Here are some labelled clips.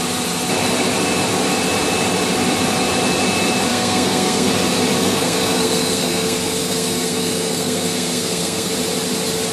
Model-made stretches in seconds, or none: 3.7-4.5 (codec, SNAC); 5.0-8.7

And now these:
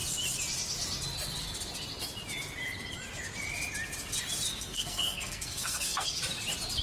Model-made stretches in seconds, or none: 4.5-6.2 (codec, SNAC)